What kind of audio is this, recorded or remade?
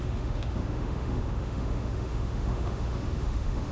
remade